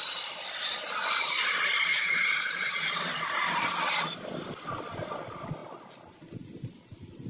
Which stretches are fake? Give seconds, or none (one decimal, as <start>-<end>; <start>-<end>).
1.9-2.9